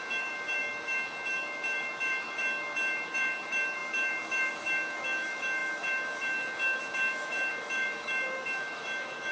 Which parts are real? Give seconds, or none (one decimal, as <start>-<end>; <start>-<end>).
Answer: none